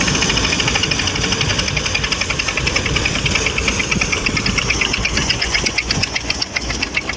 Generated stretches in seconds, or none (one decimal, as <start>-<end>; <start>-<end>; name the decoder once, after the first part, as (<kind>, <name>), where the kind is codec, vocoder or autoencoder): 5.2-6.7 (vocoder, Vocos)